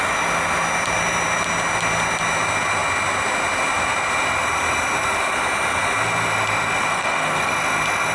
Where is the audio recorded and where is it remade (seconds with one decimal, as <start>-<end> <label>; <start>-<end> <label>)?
0.0-6.9 recorded; 6.9-7.5 remade; 7.5-8.1 recorded